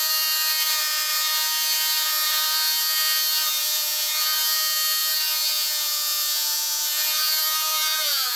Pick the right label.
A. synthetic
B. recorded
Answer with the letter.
A